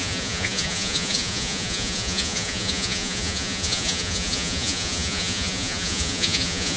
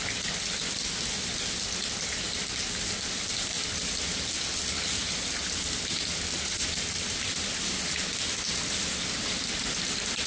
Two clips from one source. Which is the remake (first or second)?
first